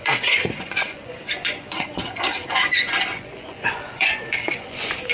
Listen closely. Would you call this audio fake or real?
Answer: fake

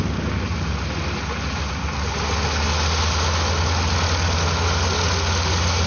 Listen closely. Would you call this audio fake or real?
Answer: real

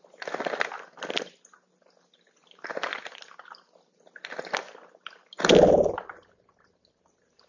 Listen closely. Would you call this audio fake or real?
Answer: real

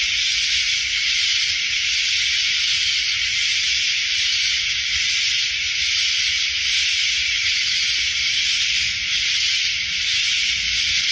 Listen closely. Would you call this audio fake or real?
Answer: fake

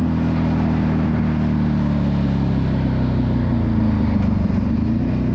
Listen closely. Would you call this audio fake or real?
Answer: real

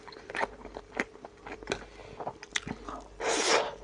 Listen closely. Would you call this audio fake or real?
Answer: real